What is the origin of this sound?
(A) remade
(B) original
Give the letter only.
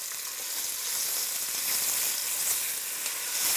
B